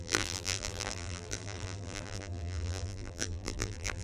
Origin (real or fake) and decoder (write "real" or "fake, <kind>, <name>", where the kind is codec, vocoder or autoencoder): fake, vocoder, BigVGAN v2